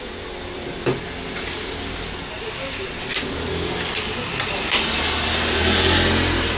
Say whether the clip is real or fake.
real